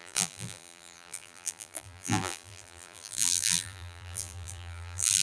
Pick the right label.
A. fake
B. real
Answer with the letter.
A